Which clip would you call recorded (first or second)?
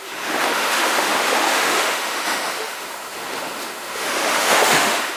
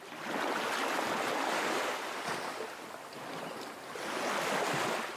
second